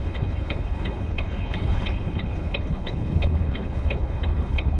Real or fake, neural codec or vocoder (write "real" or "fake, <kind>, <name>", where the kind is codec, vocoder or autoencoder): fake, codec, HILCodec